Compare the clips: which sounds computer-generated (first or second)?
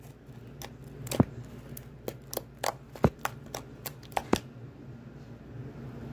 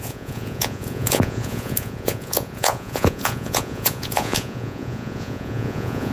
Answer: second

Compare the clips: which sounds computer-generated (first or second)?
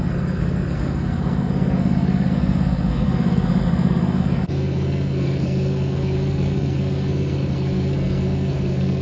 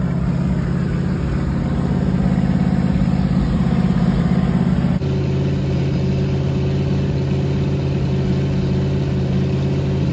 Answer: first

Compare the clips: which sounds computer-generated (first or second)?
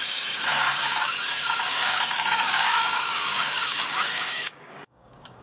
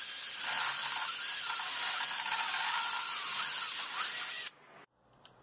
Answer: first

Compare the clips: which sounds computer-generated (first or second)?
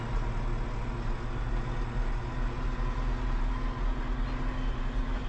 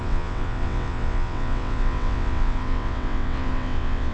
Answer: second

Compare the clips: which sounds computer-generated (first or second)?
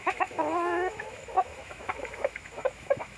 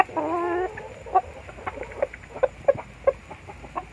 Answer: first